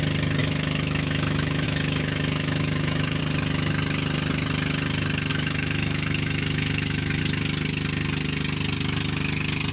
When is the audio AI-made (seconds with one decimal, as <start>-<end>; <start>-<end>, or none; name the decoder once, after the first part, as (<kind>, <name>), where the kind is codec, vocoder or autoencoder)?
0.4-3.2 (autoencoder, DAC-VAE); 5.3-7.2